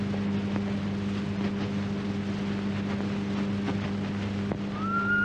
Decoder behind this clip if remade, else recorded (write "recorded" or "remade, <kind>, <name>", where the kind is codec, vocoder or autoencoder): recorded